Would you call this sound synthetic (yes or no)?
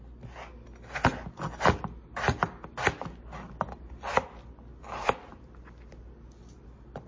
no